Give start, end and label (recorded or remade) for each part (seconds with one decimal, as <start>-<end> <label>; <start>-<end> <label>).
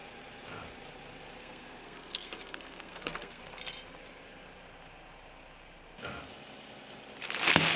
0.0-1.4 recorded; 1.4-3.4 remade; 3.4-7.8 recorded